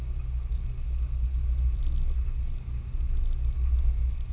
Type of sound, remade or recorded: recorded